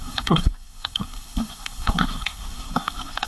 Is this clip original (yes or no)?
no